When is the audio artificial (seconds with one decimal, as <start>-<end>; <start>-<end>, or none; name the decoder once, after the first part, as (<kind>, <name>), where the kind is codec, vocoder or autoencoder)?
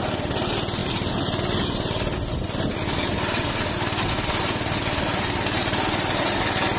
none